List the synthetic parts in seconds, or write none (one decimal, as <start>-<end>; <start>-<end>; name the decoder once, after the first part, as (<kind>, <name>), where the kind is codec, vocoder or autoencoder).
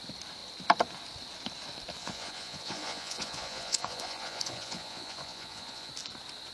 2.0-5.9 (vocoder, Vocos)